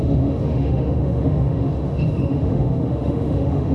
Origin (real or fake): fake